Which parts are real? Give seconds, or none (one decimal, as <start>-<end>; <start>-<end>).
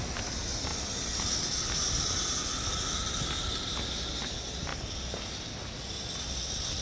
0.0-6.8